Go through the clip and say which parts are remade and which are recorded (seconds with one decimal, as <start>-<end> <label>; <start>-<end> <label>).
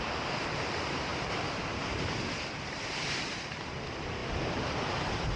0.0-5.4 remade